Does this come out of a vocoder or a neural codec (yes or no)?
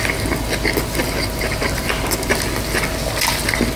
no